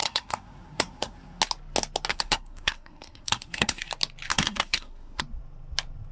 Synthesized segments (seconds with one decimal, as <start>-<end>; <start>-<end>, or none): 0.0-1.4; 2.1-3.9; 4.3-5.2